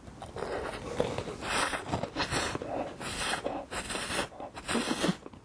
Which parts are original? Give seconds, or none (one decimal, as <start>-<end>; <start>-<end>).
0.0-5.4

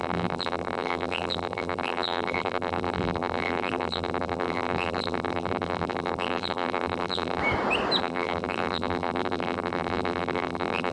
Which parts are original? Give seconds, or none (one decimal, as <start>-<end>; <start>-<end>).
7.4-8.0

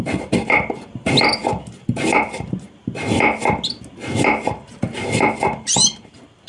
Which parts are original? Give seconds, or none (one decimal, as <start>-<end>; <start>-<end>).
1.4-4.5